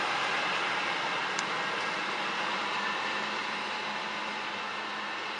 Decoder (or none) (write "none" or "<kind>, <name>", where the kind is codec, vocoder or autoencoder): none